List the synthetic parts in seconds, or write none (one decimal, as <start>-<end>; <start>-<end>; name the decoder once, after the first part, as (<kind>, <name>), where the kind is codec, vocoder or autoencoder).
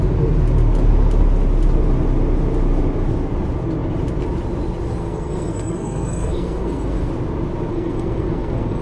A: 5.0-7.1 (codec, SNAC); 7.7-8.8